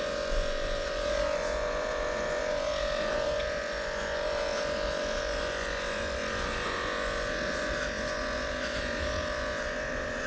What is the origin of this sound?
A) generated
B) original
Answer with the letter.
A